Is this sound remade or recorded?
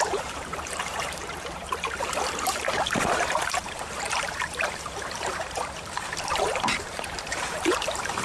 remade